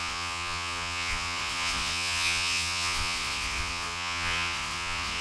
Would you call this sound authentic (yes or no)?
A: no